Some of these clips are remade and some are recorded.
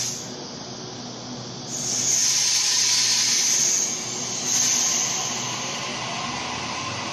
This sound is recorded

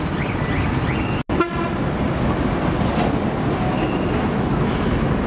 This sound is recorded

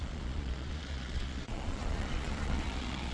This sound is remade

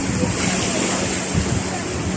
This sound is recorded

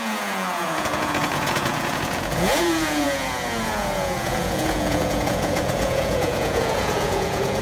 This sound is remade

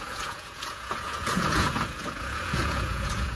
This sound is remade